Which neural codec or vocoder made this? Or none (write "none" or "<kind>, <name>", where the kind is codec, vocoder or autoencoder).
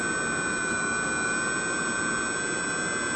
none